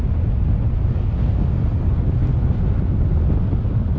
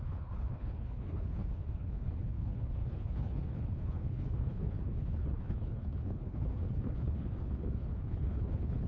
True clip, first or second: first